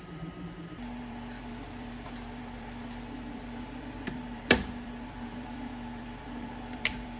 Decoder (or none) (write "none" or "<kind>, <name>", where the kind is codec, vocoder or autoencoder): vocoder, BigVGAN v2